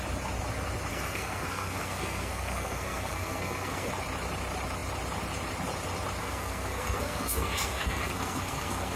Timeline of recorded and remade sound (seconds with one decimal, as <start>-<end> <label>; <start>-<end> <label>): 0.0-0.9 recorded; 0.9-3.9 remade; 3.9-6.2 recorded; 6.2-9.0 remade